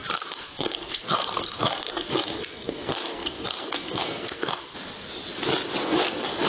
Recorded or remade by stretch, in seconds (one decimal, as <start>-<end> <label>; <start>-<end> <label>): 0.0-4.7 remade; 4.7-5.8 recorded; 5.8-6.5 remade